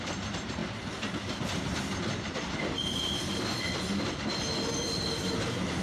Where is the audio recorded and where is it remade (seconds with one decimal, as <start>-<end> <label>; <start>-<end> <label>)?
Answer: 0.0-5.8 recorded